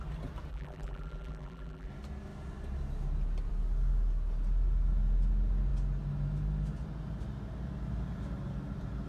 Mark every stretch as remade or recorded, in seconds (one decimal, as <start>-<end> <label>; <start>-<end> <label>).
0.0-0.5 recorded; 0.5-1.9 remade; 1.9-9.1 recorded